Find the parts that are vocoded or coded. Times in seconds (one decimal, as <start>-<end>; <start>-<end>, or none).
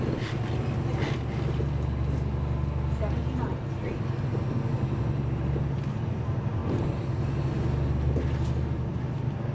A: none